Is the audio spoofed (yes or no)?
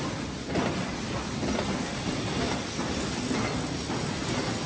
no